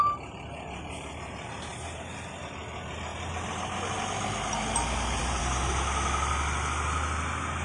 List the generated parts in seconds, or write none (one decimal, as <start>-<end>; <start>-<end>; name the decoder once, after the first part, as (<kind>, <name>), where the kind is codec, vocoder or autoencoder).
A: none